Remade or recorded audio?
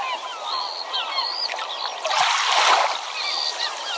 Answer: recorded